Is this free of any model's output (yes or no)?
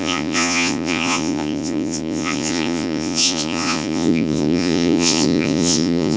no